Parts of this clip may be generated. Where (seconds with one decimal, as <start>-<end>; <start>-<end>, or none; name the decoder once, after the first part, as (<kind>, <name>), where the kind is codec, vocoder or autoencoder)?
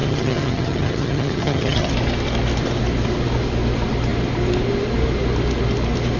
0.0-1.9 (vocoder, HiFi-GAN)